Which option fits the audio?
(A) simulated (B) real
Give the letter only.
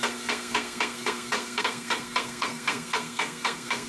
A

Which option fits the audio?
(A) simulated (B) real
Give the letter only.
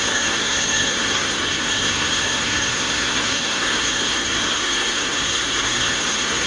A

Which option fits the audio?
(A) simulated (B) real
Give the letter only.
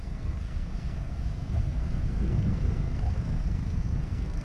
A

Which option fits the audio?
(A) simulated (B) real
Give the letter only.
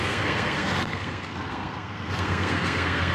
A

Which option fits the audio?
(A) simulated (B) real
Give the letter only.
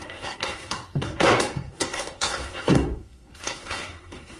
A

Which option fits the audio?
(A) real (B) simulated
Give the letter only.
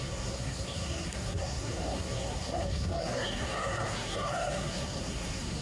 B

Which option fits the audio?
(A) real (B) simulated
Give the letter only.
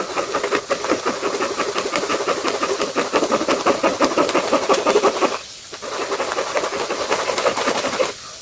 A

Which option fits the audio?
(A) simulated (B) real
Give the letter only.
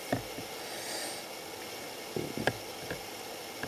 B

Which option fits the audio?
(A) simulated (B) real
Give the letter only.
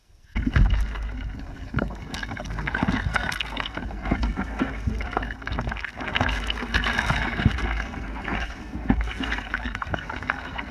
A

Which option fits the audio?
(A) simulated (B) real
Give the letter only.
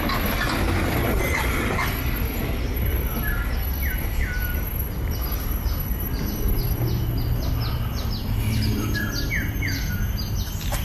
B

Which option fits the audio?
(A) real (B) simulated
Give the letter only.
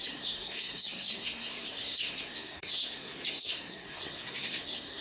B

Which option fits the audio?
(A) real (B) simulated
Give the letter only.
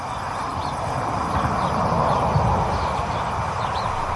A